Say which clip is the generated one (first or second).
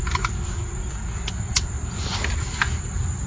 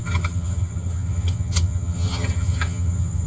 second